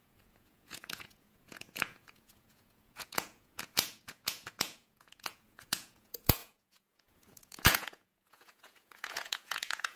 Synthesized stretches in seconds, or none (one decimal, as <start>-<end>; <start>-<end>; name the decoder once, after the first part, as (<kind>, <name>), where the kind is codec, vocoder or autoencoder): 0.0-10.0 (vocoder, Vocos)